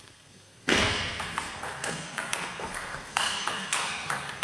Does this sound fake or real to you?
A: fake